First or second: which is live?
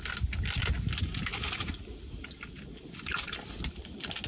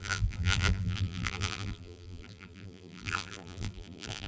first